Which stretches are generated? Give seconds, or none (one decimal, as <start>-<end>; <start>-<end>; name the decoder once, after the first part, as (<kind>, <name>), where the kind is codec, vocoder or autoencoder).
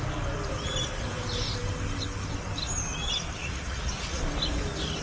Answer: 3.4-4.2 (vocoder, Vocos)